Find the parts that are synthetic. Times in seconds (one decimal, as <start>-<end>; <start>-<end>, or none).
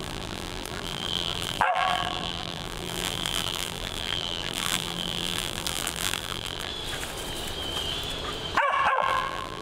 0.0-6.7; 8.9-9.6